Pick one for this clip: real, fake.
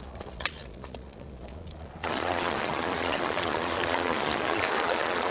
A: fake